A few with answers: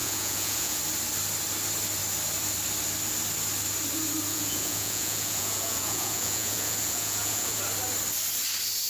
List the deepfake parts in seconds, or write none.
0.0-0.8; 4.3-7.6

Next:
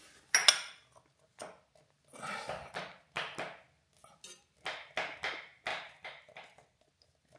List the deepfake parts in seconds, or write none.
5.7-6.9

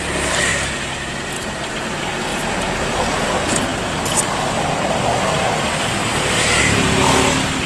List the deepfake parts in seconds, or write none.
none

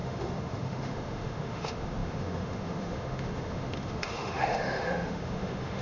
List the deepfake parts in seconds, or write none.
0.0-5.8

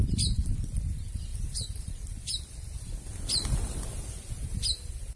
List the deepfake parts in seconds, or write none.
1.3-1.9

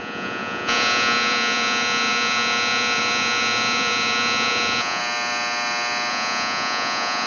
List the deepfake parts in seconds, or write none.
0.0-5.0; 6.1-7.3